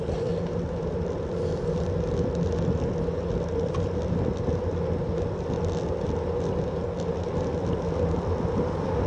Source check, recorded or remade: recorded